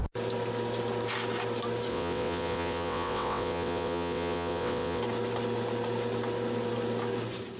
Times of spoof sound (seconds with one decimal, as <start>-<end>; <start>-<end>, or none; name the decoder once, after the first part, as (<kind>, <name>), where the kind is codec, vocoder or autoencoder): 1.9-5.0 (vocoder, WaveNeXt)